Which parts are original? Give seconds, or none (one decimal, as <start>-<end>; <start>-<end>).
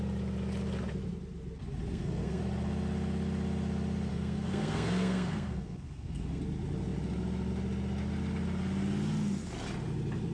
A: 0.0-1.9; 2.4-4.1; 6.4-10.3